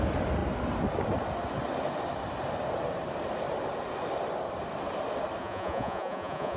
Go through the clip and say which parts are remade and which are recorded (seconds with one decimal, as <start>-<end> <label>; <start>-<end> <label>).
0.0-5.4 recorded; 5.4-6.6 remade